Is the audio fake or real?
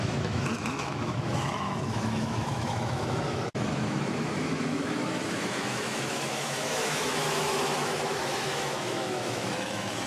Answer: fake